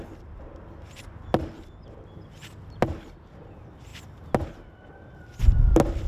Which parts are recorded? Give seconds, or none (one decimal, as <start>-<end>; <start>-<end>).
0.0-6.1